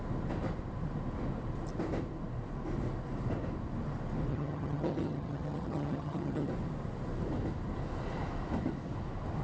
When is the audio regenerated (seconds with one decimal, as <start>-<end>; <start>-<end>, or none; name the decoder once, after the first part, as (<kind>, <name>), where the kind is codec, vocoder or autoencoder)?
4.3-6.5 (vocoder, HiFi-GAN)